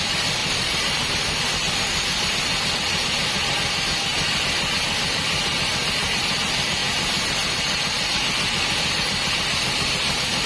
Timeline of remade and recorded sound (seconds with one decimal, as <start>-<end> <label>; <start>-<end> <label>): 0.0-0.4 recorded; 0.4-1.4 remade; 1.4-10.5 recorded